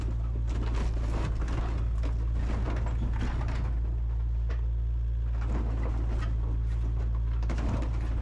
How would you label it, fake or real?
real